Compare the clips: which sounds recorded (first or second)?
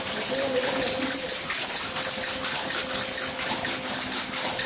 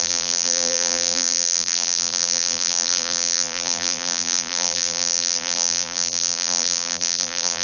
first